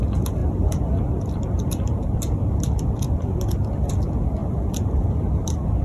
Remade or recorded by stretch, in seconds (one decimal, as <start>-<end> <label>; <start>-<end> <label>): 0.0-0.4 recorded; 0.4-3.9 remade; 3.9-4.4 recorded; 4.4-4.9 remade; 4.9-5.8 recorded

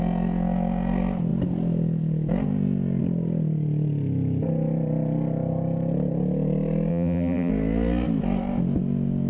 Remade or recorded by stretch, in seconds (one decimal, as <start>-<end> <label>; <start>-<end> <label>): 0.0-6.9 recorded; 6.9-7.5 remade; 7.5-9.3 recorded

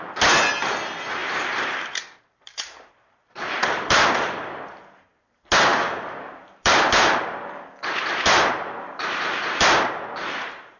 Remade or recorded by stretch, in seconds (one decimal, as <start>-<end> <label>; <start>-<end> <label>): 0.0-1.2 recorded; 1.2-4.6 remade; 4.6-5.7 recorded; 5.7-9.4 remade; 9.4-10.8 recorded